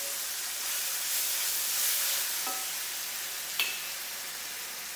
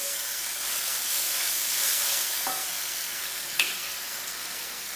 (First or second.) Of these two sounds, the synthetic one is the second